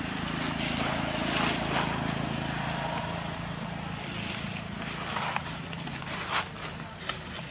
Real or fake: real